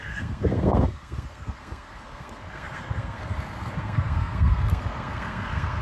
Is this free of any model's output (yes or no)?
no